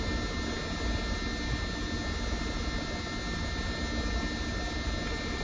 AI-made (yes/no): no